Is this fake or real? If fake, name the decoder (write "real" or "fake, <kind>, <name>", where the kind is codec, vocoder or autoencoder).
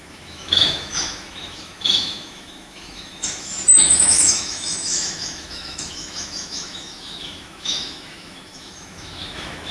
fake, autoencoder, DAC-VAE